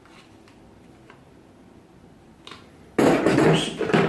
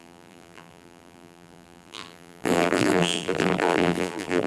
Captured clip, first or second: first